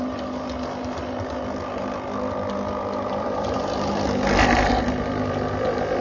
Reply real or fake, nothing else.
fake